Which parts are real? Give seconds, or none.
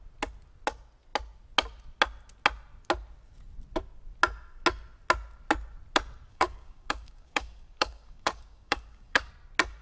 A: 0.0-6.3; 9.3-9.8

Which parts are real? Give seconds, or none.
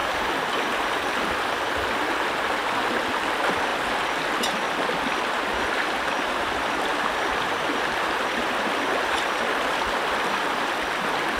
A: 2.7-6.9; 7.6-11.4